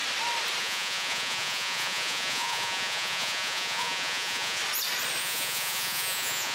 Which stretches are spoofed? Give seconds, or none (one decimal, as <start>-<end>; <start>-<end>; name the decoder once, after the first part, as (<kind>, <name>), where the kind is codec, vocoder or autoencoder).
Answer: 0.6-4.6 (vocoder, Vocos); 5.2-6.5